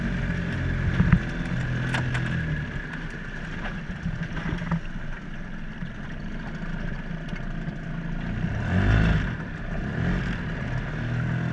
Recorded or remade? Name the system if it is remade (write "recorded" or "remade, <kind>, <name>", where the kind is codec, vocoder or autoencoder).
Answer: recorded